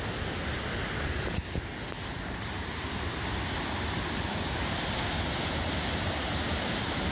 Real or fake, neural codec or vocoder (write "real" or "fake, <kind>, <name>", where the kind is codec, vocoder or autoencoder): real